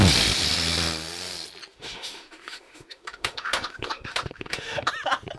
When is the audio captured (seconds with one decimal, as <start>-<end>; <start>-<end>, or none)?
0.0-1.7; 4.9-5.4